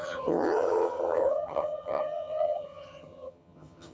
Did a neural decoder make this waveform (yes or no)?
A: yes